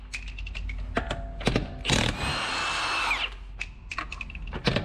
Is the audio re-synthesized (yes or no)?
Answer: no